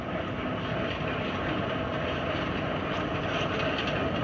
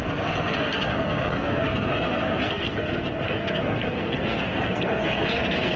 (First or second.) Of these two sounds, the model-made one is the second